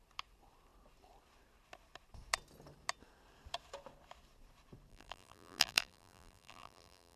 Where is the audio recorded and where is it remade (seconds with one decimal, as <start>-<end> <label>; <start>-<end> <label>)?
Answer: 0.0-4.9 recorded; 4.9-7.2 remade